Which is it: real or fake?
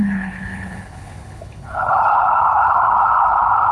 fake